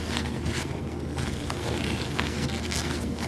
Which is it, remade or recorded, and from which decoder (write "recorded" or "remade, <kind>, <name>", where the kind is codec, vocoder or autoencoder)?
remade, codec, SNAC